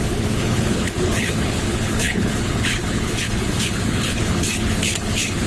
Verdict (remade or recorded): remade